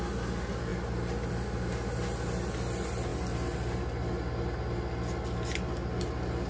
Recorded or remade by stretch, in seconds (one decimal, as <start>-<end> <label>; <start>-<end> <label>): 0.0-6.5 recorded